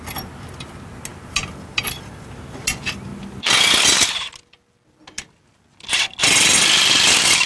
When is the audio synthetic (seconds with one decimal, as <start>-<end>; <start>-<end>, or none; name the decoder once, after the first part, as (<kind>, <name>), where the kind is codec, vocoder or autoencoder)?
1.1-2.4 (vocoder, BigVGAN v2)